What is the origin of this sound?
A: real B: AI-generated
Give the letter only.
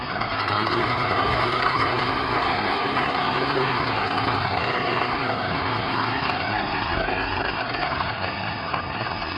B